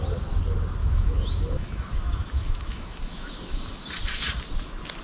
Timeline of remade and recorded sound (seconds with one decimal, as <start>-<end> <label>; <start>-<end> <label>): 0.0-0.8 recorded; 0.8-3.8 remade; 3.8-5.0 recorded